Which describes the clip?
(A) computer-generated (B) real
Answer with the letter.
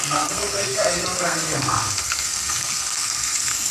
A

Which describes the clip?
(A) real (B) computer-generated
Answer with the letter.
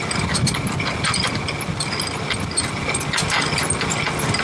A